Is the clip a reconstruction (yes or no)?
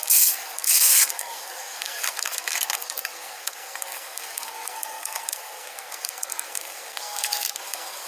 yes